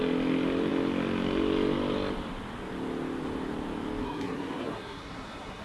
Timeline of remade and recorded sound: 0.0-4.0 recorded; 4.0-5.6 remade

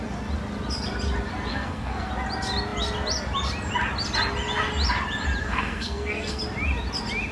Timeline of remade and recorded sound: 0.0-1.5 recorded; 1.5-2.1 remade; 2.1-5.4 recorded; 5.4-6.4 remade; 6.4-7.3 recorded

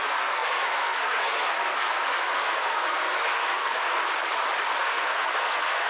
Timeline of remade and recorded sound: 0.0-4.0 remade; 4.0-4.8 recorded; 4.8-5.9 remade

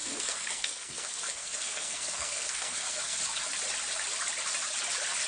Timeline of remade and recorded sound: 0.0-3.2 remade; 3.2-5.3 recorded

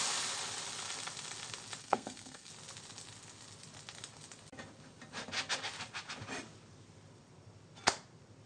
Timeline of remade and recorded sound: 0.0-1.8 recorded; 1.8-2.5 remade; 2.5-8.5 recorded

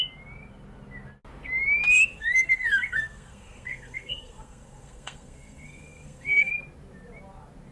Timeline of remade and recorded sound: 0.0-1.9 recorded; 1.9-6.5 remade; 6.5-7.7 recorded